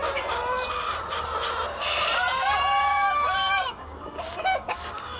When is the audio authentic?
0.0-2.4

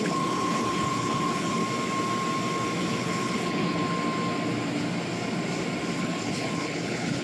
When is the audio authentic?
1.6-2.8; 3.8-6.0

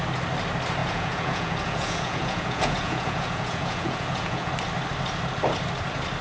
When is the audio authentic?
0.0-0.8; 4.5-6.2

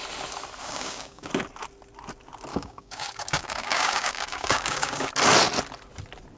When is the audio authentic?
0.0-0.6; 1.3-2.5; 5.1-6.4

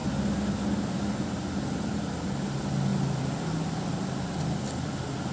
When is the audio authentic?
0.0-5.3